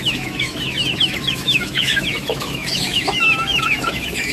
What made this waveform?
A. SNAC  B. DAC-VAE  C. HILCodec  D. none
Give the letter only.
B